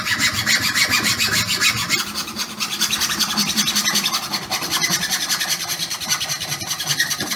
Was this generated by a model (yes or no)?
no